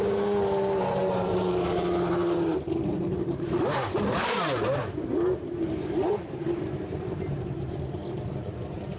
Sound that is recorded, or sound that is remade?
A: remade